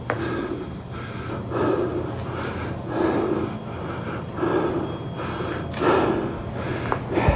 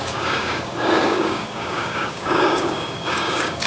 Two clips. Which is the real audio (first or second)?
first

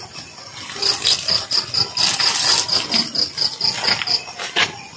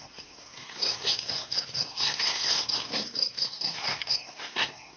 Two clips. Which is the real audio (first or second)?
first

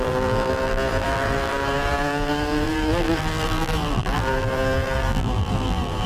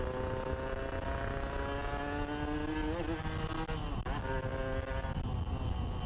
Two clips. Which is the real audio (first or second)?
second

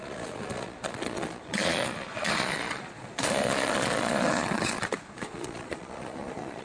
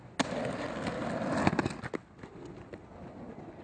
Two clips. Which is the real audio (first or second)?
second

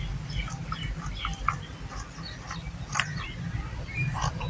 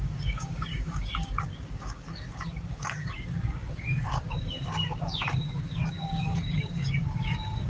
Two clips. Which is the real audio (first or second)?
first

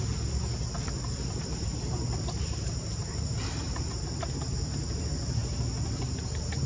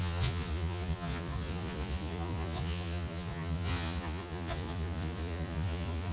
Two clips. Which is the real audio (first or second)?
first